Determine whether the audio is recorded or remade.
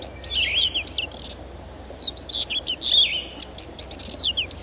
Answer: recorded